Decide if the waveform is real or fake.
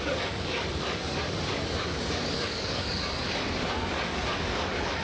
fake